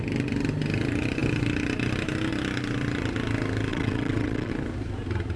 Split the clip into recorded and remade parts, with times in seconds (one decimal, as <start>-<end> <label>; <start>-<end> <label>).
0.0-3.7 recorded; 3.7-4.5 remade; 4.5-5.4 recorded